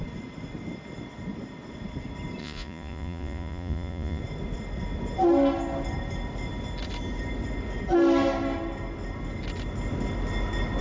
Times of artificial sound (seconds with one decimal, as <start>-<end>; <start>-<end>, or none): 2.4-4.2